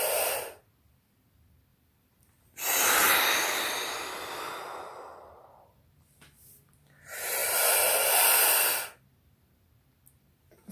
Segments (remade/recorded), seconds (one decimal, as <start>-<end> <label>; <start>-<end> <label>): 0.0-1.7 recorded; 1.7-3.9 remade; 3.9-10.7 recorded